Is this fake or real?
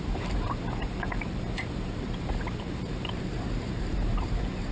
fake